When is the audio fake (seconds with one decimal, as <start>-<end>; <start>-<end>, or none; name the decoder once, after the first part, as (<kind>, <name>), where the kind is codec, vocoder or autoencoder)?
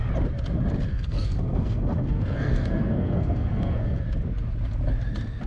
0.9-4.0 (codec, SNAC)